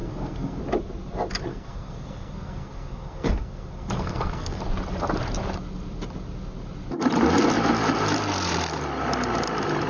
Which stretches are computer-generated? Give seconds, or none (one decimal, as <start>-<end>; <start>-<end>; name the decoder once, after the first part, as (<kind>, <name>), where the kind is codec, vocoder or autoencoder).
0.0-0.6 (codec, SNAC); 1.5-4.6